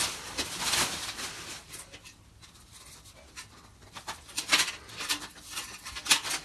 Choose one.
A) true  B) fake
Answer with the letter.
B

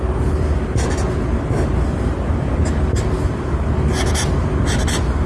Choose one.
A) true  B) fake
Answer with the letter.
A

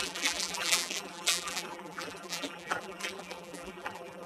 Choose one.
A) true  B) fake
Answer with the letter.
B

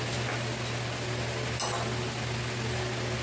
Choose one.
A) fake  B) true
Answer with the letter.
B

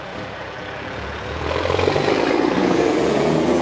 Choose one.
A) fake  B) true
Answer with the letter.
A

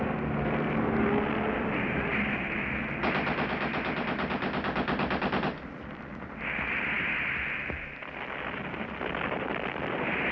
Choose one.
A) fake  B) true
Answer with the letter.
B